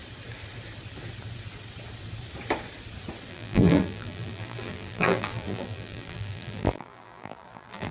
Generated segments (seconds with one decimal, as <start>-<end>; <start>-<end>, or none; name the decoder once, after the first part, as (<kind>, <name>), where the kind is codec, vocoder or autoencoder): 3.3-7.9 (vocoder, BigVGAN v2)